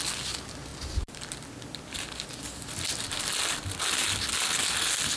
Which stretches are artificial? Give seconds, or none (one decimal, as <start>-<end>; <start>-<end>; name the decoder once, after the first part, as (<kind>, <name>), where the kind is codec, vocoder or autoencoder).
none